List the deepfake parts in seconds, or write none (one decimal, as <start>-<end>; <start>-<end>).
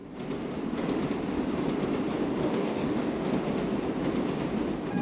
2.4-3.3